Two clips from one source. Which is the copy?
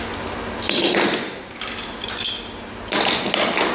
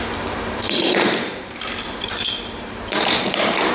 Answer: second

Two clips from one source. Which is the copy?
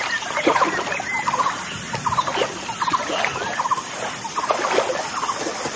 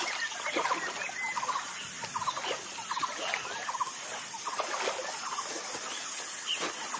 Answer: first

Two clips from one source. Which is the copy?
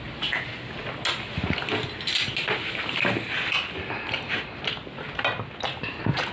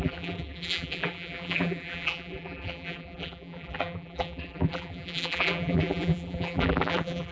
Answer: second